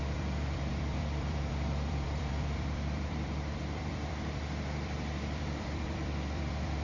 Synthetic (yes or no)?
yes